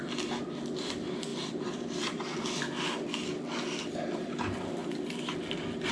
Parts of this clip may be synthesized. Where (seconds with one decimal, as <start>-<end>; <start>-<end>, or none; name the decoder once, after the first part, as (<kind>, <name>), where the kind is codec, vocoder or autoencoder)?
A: 1.3-3.1 (vocoder, BigVGAN v2)